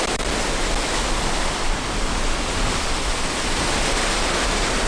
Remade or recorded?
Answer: recorded